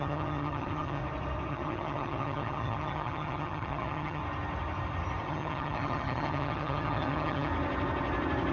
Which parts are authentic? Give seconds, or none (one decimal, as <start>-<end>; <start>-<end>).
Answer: 1.0-1.5; 4.2-5.3; 7.5-8.5